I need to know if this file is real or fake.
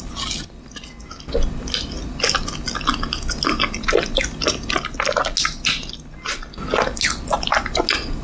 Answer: real